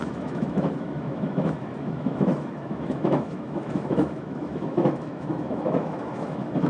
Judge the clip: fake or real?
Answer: fake